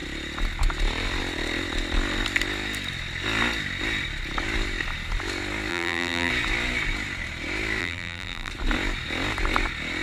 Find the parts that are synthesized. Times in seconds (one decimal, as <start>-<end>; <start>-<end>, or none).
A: 5.7-6.3; 7.8-8.5